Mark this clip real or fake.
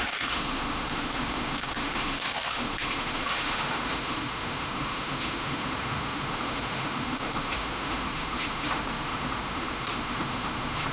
fake